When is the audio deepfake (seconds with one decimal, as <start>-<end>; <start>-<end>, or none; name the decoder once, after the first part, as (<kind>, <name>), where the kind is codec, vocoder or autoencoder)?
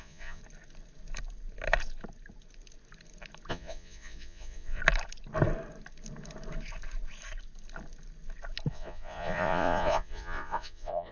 0.0-0.4 (vocoder, Vocos); 3.5-4.8; 8.7-11.1